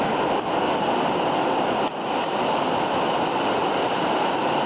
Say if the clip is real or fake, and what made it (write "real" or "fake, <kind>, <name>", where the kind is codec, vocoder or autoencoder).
real